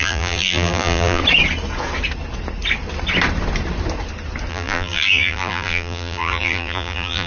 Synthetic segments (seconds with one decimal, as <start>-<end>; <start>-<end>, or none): 0.0-1.2; 4.5-7.3